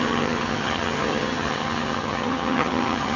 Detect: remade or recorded remade